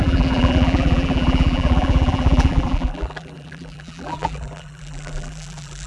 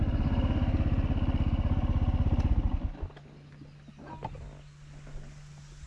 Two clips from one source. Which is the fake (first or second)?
first